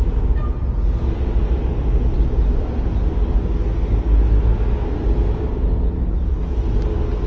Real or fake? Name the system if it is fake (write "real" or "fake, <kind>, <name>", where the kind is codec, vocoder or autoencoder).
real